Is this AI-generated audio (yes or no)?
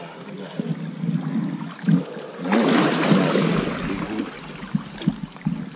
no